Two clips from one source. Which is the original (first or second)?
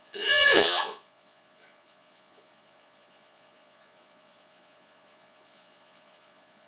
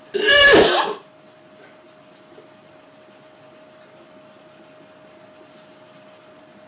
second